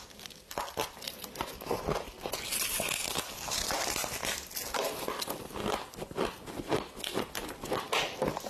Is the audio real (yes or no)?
yes